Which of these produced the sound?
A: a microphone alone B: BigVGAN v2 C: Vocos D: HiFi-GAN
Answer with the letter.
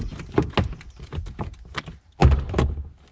A